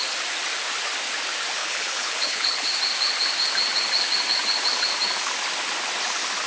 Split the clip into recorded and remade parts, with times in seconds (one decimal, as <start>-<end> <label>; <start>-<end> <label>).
0.0-1.6 recorded; 1.6-2.7 remade; 2.7-6.5 recorded